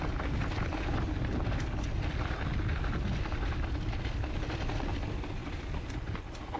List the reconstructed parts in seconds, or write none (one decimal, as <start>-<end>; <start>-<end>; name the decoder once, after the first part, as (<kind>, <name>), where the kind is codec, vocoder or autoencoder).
none